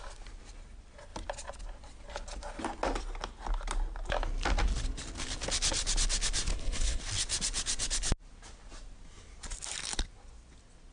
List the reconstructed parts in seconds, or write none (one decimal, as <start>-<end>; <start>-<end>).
6.5-7.0